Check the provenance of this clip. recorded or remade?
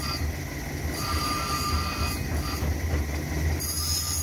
recorded